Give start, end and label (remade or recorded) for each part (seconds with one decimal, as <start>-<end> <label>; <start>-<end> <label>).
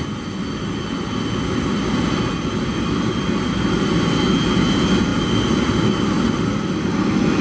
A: 0.0-7.4 recorded